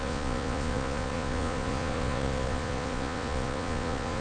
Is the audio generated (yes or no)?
yes